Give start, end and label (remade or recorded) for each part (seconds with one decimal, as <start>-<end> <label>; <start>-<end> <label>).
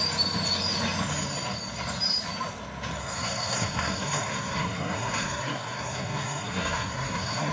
0.0-3.0 recorded; 3.0-7.5 remade